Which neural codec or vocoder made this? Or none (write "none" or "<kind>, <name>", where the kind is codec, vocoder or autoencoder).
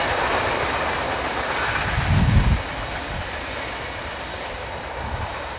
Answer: vocoder, BigVGAN v2